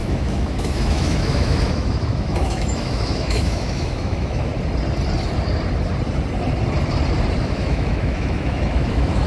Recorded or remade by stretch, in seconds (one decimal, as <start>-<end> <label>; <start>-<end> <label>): 0.0-4.5 remade; 4.5-7.4 recorded; 7.4-9.3 remade